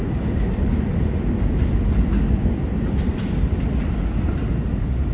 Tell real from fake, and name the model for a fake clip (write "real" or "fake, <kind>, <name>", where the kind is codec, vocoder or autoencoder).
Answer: real